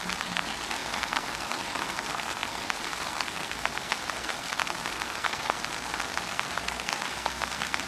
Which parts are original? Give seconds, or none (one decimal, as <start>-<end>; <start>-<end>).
none